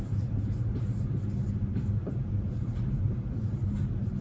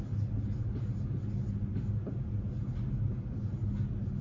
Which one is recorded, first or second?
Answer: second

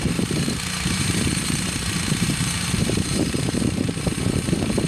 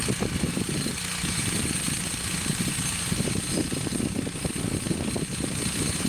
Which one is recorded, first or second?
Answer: second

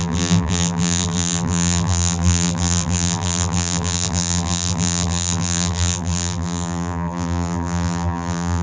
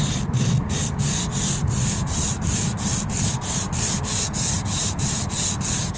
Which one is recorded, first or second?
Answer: second